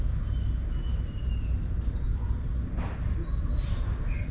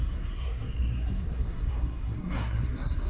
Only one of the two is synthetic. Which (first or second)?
second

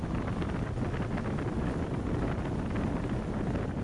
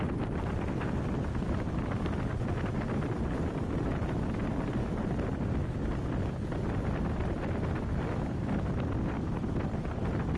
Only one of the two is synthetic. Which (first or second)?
second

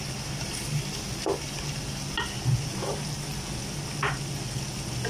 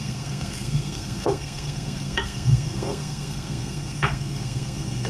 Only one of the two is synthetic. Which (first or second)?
second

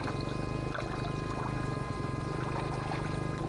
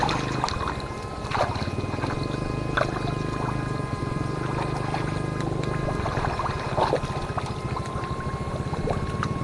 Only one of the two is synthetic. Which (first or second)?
second